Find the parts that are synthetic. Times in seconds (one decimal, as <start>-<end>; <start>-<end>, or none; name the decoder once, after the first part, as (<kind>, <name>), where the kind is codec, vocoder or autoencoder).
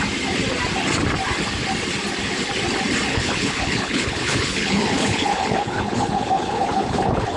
3.1-7.4 (codec, HILCodec)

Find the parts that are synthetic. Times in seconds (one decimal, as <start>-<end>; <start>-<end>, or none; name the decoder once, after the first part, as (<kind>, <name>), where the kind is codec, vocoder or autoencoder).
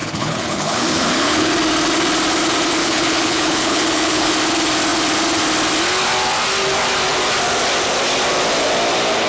0.0-1.5 (codec, HILCodec); 2.8-4.3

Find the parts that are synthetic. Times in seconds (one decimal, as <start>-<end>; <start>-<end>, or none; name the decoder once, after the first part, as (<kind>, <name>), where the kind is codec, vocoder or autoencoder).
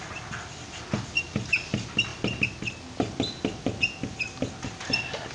none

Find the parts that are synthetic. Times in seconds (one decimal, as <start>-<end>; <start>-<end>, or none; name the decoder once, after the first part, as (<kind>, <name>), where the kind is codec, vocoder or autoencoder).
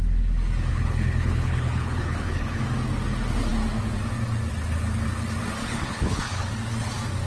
0.7-2.6 (codec, HILCodec); 5.6-6.5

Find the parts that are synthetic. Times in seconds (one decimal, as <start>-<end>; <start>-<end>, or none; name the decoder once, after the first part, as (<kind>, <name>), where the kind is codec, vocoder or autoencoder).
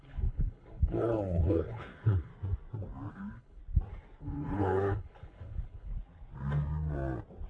0.0-2.3 (codec, HILCodec); 3.1-3.6; 4.2-5.9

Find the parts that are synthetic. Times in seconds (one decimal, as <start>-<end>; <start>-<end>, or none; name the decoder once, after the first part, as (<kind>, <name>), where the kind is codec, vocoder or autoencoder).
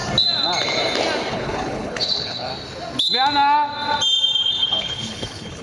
1.3-2.5 (codec, HILCodec); 4.4-5.6